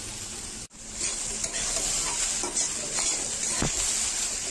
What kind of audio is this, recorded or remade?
recorded